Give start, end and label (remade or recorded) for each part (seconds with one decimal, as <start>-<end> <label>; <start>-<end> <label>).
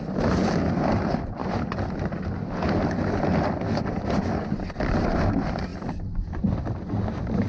0.0-7.5 recorded